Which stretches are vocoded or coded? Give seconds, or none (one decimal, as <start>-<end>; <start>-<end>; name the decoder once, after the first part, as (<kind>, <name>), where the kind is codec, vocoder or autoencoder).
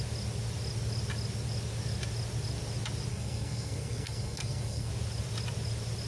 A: 3.1-4.9 (codec, SNAC)